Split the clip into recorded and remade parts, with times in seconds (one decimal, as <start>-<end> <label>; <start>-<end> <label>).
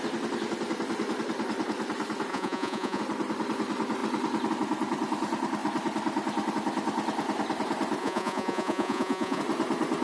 0.0-2.3 recorded; 2.3-3.0 remade; 3.0-8.0 recorded; 8.0-9.4 remade; 9.4-10.0 recorded